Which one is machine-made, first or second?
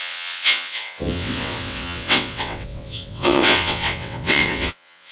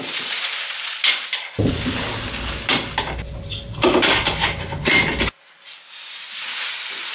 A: first